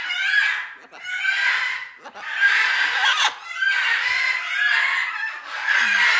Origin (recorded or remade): recorded